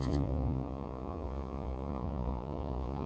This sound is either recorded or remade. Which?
remade